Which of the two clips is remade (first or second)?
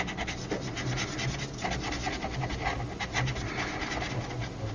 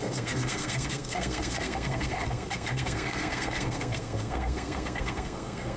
second